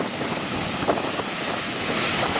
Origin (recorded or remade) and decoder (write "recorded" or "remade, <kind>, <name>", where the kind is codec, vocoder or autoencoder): recorded